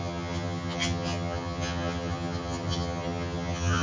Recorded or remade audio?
remade